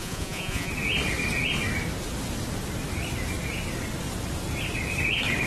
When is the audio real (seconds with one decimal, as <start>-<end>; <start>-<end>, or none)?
0.7-5.5